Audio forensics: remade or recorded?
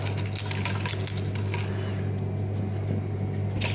recorded